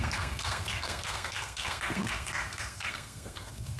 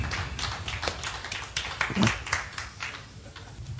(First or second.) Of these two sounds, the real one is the second